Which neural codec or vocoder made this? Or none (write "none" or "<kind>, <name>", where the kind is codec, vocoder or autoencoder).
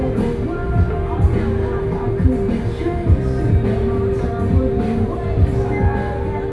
none